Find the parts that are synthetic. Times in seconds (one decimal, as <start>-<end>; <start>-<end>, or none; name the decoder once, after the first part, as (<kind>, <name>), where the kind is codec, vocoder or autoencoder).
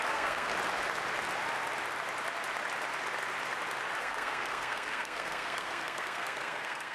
0.0-0.5 (codec, SNAC); 4.0-6.9